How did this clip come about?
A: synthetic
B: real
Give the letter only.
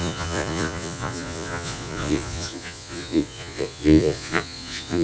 A